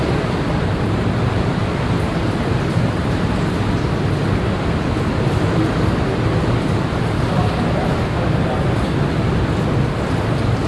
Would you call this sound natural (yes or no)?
yes